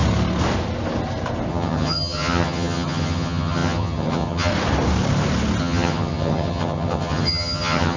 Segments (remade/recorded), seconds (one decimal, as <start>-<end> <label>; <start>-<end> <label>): 0.0-1.5 recorded; 1.5-4.5 remade; 4.5-5.6 recorded; 5.6-8.0 remade